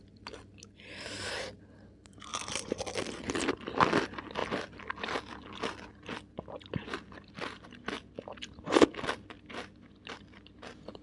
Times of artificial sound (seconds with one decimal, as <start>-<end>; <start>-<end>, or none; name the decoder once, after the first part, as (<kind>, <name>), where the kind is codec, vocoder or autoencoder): none